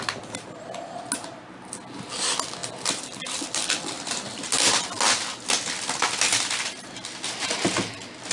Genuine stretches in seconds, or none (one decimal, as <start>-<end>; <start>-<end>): 0.0-2.6; 4.3-8.3